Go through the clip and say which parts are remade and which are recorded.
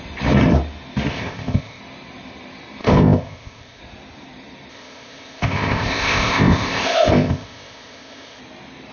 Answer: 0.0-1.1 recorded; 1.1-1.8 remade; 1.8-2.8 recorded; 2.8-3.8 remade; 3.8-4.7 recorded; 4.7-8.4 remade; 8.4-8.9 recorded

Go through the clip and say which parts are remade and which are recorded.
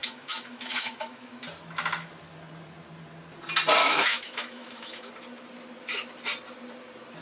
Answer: 0.0-1.3 remade; 1.3-3.8 recorded; 3.8-5.1 remade; 5.1-7.2 recorded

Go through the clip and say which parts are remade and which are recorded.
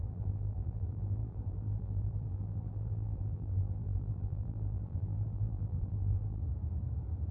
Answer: 0.0-6.4 remade; 6.4-7.3 recorded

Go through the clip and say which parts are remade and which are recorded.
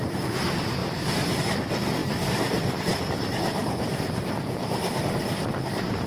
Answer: 0.0-2.0 recorded; 2.0-3.0 remade; 3.0-3.6 recorded; 3.6-4.9 remade; 4.9-6.1 recorded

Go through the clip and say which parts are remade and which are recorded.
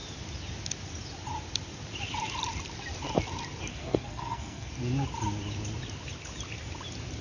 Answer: 0.0-3.7 recorded; 3.7-4.7 remade; 4.7-7.2 recorded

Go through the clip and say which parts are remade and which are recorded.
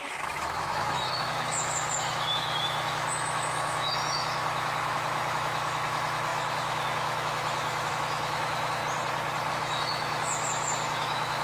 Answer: 0.0-8.8 remade; 8.8-9.5 recorded; 9.5-11.4 remade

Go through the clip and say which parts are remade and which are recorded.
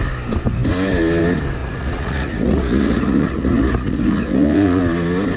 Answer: 0.0-1.6 recorded; 1.6-4.8 remade; 4.8-5.4 recorded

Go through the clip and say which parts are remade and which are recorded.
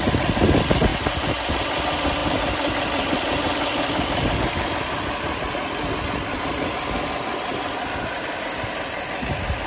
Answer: 0.0-9.7 recorded